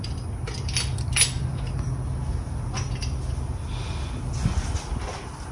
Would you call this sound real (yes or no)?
yes